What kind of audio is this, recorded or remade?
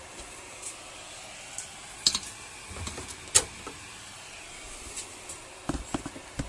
recorded